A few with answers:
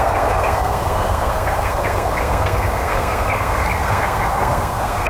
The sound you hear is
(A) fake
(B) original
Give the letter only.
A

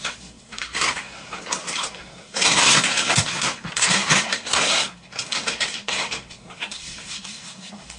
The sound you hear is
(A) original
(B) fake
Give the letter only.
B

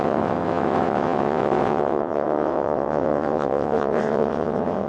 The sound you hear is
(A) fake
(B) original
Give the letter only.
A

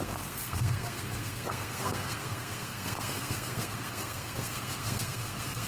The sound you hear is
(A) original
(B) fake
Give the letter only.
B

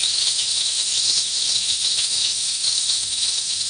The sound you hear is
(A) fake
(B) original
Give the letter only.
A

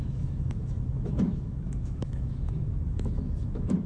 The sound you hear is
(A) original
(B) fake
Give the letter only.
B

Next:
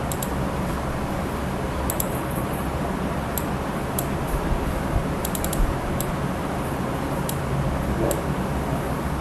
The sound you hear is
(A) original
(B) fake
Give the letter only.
A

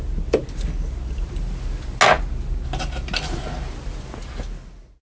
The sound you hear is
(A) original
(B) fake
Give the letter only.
A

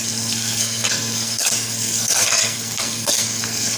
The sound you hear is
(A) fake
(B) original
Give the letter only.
A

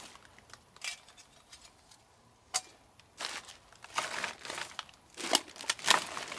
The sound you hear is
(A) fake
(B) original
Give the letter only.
B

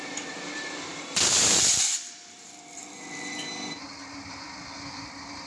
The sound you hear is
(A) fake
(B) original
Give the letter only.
A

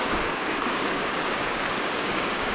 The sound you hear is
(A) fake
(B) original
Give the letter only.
A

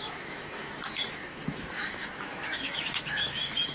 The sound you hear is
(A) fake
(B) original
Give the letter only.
A